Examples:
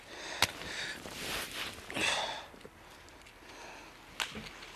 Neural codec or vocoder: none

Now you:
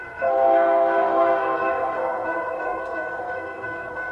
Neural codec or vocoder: codec, SNAC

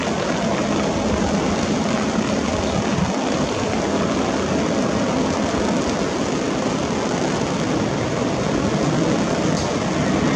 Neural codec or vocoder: none